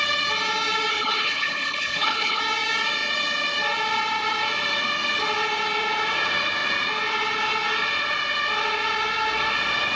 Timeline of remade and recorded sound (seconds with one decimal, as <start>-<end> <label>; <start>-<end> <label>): 0.0-0.9 recorded; 0.9-2.4 remade; 2.4-10.0 recorded